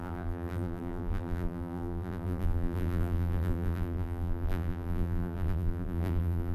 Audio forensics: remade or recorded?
remade